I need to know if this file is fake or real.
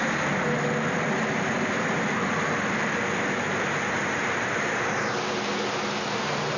real